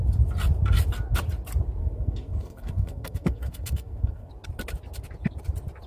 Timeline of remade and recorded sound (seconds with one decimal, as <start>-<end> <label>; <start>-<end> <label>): 0.0-1.8 recorded; 1.8-4.3 remade; 4.3-5.9 recorded